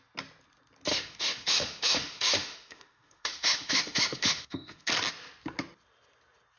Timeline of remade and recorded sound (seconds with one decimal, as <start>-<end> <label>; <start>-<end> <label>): 0.0-0.9 recorded; 0.9-4.9 remade; 4.9-6.6 recorded